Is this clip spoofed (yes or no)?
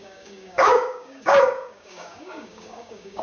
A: yes